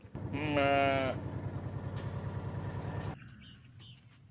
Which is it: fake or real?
real